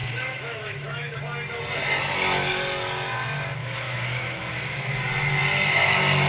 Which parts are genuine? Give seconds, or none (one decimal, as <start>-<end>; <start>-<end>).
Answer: 1.2-3.6; 5.0-6.3